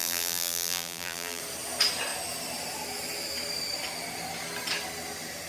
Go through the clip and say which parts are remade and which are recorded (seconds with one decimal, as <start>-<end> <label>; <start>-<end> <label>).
0.0-1.4 remade; 1.4-5.5 recorded